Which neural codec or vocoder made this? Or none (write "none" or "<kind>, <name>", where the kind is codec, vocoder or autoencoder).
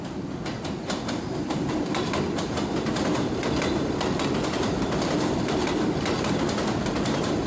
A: none